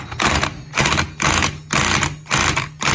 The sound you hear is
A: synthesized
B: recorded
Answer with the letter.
B